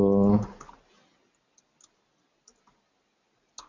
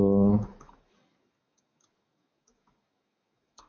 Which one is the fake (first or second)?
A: second